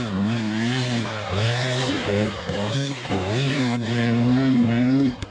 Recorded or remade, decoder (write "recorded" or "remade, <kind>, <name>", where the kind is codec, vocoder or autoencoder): remade, codec, SNAC